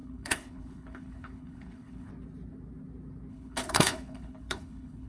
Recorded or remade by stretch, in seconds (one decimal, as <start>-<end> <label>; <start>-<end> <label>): 0.0-2.1 remade; 2.1-3.3 recorded; 3.3-5.1 remade